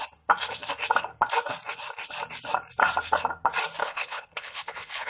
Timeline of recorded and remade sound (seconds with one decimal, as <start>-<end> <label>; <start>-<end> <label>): 0.0-3.8 recorded; 3.8-5.1 remade